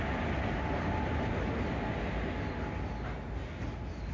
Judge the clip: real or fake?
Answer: real